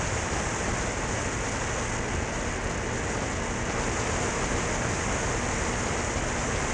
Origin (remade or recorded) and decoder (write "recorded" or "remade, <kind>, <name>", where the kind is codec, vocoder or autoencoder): recorded